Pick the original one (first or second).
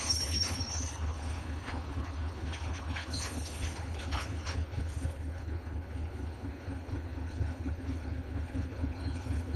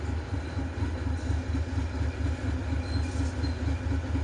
second